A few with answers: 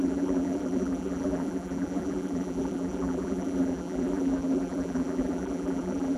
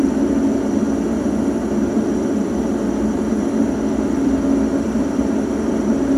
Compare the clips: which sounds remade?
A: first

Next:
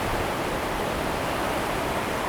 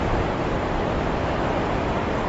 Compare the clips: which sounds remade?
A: first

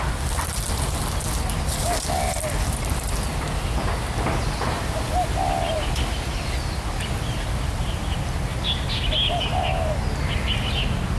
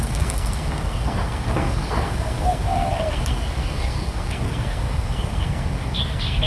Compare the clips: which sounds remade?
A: second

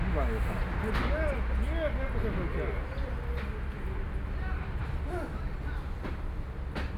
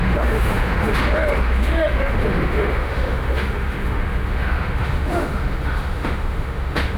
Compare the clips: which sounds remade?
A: second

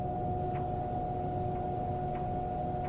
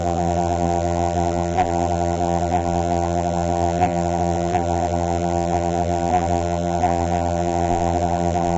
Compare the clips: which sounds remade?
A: second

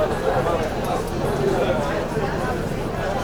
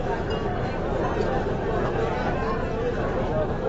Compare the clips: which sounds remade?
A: first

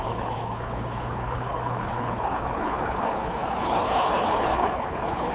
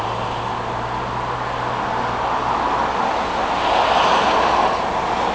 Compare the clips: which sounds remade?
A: first